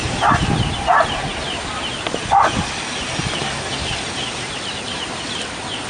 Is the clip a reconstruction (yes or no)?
no